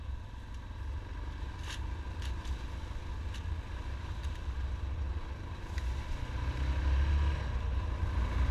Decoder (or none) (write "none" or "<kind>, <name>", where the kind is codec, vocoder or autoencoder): none